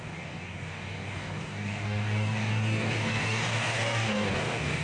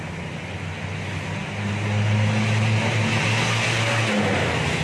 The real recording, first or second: second